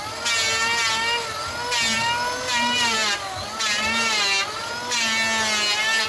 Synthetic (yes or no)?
no